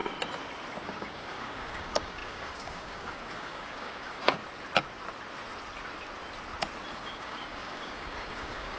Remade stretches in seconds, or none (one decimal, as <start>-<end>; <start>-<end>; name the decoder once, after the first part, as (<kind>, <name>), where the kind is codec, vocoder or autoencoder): 0.8-4.4 (codec, DAC); 6.9-8.8

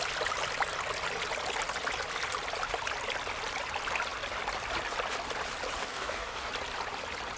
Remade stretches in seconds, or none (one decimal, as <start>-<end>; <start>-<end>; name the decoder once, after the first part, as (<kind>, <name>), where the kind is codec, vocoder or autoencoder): 5.8-6.5 (codec, DAC)

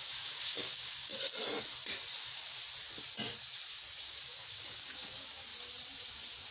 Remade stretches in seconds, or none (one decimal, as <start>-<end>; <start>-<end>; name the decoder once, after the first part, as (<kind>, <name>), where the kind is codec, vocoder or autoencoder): 0.0-1.1 (codec, DAC); 4.0-5.5

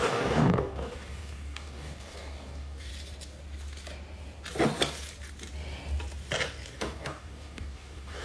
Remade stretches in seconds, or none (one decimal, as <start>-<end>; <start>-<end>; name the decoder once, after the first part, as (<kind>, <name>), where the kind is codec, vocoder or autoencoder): 0.0-2.9 (codec, DAC); 6.7-8.2